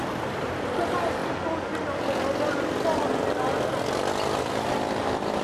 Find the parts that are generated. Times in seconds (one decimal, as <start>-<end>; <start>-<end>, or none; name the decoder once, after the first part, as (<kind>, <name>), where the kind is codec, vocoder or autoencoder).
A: 0.0-1.2 (vocoder, BigVGAN v2); 4.4-5.4